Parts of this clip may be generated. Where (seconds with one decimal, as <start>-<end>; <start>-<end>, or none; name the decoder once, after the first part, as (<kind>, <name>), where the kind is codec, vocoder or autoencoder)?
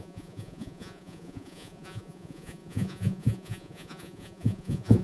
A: 0.0-5.0 (vocoder, Vocos)